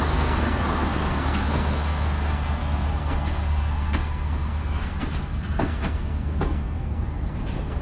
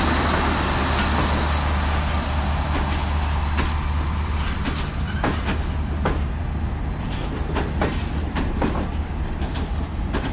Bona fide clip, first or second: second